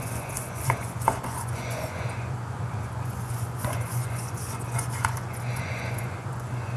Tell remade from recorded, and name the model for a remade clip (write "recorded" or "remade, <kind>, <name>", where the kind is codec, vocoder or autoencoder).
remade, vocoder, Vocos